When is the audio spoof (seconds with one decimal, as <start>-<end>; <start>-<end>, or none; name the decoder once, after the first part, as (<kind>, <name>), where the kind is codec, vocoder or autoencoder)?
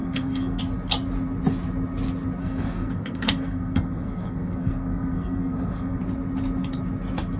0.0-0.6 (codec, SNAC); 2.4-6.0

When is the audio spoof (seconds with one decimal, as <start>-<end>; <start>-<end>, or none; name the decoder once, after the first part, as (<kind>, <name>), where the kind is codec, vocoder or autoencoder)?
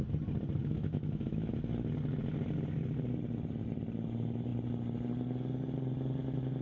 0.6-1.5 (autoencoder, DAC-VAE)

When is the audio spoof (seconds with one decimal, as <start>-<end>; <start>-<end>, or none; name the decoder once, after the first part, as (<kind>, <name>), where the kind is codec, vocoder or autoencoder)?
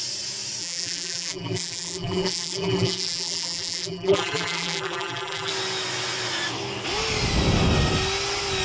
0.6-5.5 (vocoder, BigVGAN v2)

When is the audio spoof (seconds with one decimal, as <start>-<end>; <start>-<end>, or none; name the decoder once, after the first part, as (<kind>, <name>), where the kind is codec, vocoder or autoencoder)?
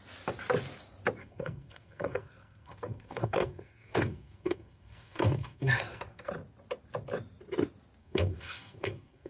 1.2-6.3 (codec, SNAC); 8.0-9.3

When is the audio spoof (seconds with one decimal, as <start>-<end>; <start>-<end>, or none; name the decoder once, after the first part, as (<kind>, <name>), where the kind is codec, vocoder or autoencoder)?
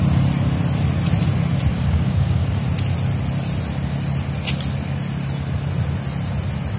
1.7-2.6 (codec, DAC)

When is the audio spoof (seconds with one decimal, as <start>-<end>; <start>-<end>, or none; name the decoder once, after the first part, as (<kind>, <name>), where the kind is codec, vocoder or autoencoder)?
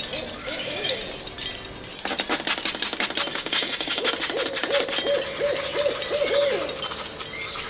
0.4-1.0 (codec, DAC); 3.3-4.1